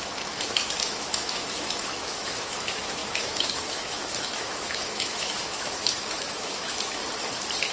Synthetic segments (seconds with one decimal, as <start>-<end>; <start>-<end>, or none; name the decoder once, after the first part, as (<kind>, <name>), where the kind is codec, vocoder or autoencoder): 0.0-7.0 (autoencoder, DAC-VAE)